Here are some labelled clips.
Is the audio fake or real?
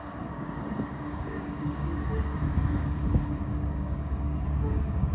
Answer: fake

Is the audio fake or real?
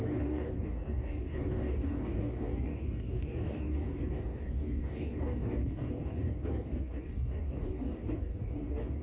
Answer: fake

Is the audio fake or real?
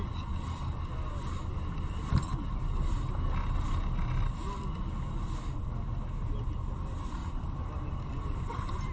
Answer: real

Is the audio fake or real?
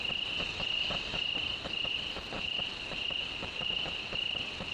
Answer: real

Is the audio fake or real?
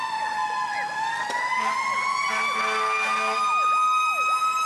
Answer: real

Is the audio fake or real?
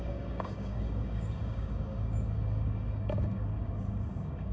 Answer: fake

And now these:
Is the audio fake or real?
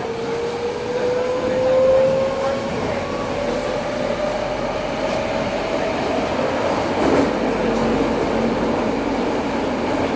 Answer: real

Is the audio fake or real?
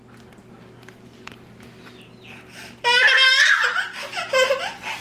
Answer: real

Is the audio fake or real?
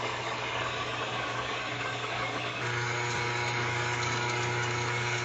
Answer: fake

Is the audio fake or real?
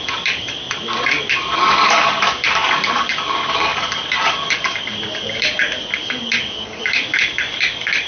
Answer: fake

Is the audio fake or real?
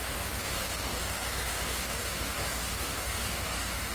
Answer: fake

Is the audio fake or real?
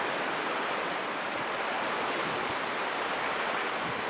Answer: real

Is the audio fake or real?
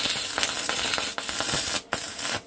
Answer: real